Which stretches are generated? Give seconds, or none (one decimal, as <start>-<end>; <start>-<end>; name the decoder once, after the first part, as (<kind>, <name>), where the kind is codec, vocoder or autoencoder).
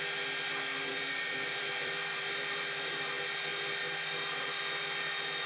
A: 0.9-2.9 (vocoder, BigVGAN v2)